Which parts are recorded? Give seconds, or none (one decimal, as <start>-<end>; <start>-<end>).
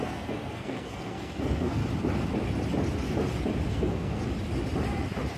1.8-3.7; 4.2-5.4